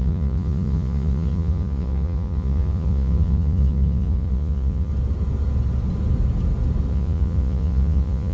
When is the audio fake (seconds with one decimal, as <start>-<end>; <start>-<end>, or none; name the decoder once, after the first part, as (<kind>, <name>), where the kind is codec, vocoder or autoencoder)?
0.0-4.9 (vocoder, Vocos); 6.9-8.3